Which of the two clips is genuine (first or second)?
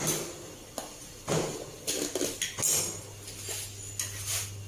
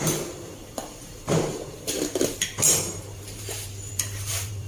first